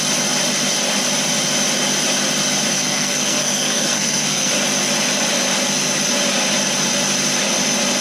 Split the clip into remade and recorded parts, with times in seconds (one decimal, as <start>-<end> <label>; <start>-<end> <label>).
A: 0.0-2.7 recorded; 2.7-4.5 remade; 4.5-8.0 recorded